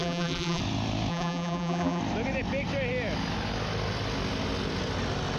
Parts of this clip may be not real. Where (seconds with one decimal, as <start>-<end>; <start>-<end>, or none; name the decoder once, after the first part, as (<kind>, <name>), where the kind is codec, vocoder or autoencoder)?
0.0-0.6 (vocoder, BigVGAN v2); 1.1-2.0